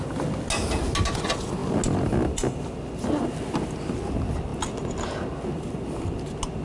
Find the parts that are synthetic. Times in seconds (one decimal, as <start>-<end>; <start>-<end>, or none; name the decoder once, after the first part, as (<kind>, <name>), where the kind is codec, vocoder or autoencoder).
none